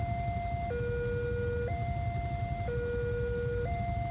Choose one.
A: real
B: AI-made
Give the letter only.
A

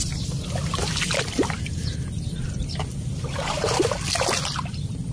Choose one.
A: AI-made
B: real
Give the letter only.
B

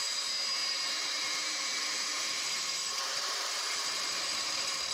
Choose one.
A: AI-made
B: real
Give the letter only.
A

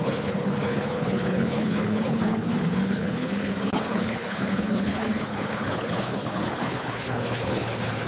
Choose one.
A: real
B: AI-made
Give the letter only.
B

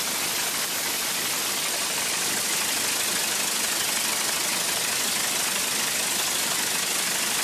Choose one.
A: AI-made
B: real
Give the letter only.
B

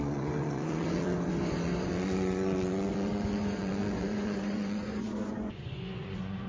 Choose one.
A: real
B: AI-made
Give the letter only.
B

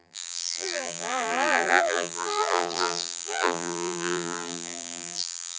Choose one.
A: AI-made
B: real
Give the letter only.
A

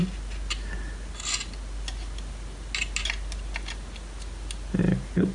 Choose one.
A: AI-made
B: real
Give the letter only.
B